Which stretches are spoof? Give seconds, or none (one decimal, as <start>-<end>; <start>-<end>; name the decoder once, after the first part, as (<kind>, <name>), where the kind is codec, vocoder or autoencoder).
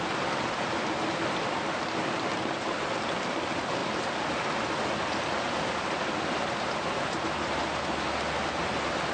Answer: none